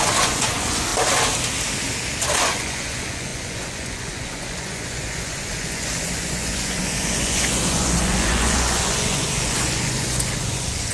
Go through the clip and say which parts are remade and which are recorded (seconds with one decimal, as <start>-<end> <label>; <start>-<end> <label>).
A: 0.0-0.9 remade; 0.9-2.4 recorded; 2.4-10.9 remade